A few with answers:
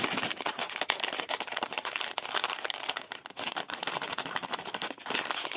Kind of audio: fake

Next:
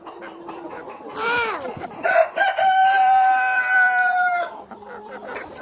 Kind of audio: fake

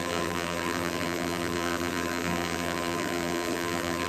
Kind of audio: fake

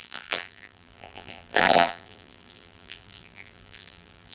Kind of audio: fake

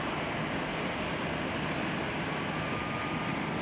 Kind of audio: real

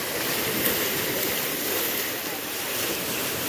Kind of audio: fake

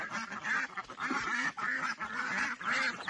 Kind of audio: fake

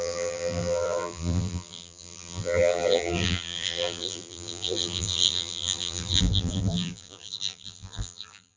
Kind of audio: fake